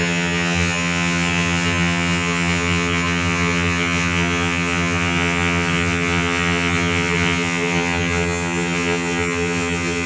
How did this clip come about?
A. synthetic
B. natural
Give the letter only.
A